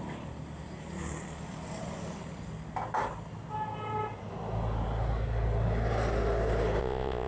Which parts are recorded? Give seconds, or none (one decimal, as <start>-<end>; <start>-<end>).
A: 0.0-6.8